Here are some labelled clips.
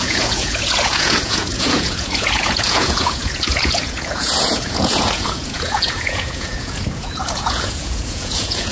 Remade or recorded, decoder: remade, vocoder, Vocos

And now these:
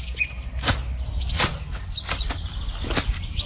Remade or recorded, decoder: recorded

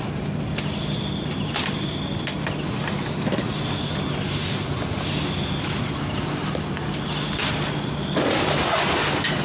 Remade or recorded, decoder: recorded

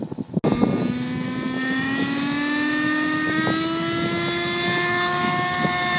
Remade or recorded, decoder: recorded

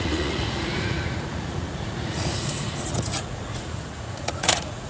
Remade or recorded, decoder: remade, vocoder, Vocos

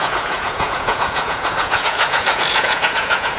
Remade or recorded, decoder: remade, vocoder, Vocos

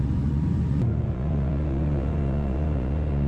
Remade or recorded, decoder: remade, vocoder, Vocos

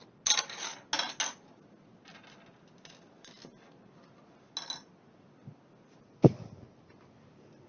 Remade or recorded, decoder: recorded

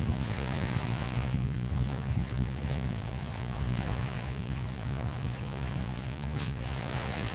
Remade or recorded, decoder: remade, vocoder, Vocos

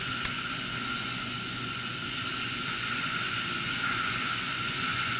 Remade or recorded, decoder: remade, vocoder, Vocos